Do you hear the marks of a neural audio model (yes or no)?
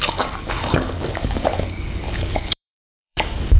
yes